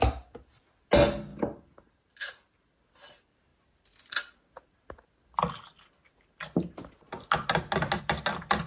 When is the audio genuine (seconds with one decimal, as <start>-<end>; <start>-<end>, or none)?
0.0-1.3; 2.1-8.7